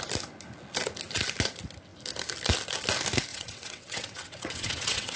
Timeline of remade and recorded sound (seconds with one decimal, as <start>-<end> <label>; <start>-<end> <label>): 0.0-3.3 recorded; 3.3-5.2 remade